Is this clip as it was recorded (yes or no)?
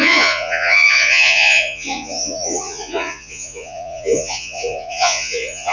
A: no